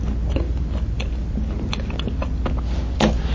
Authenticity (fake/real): real